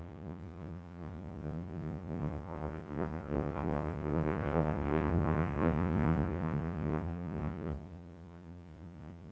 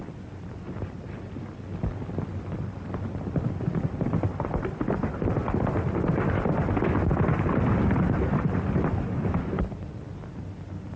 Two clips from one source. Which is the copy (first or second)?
first